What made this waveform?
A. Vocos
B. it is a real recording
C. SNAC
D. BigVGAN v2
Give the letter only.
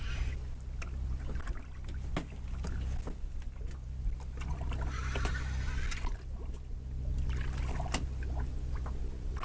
B